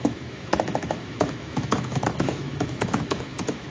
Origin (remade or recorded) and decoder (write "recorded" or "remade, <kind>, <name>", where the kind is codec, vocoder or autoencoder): remade, autoencoder, DAC-VAE